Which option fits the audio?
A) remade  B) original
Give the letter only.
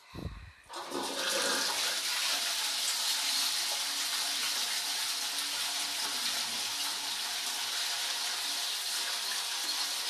B